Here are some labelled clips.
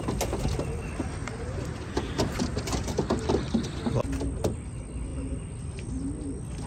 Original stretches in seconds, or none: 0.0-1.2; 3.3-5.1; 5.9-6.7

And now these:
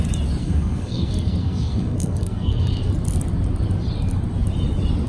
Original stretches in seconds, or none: 0.0-0.4; 2.9-5.1

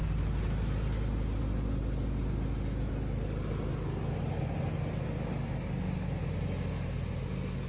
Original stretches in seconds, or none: 0.0-7.7